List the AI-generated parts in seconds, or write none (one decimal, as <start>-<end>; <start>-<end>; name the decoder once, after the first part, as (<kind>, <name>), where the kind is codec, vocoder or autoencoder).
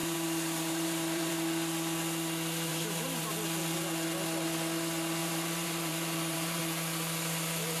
0.0-1.3 (vocoder, BigVGAN v2); 2.7-3.3; 5.2-6.6